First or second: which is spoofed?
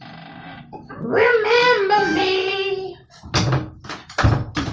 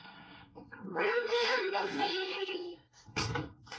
second